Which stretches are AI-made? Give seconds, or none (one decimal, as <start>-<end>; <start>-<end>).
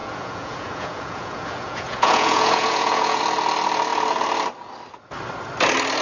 0.0-3.2